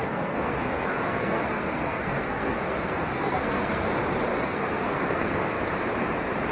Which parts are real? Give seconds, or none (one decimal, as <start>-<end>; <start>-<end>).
3.9-4.3; 5.6-6.5